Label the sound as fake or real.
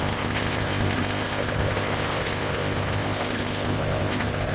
fake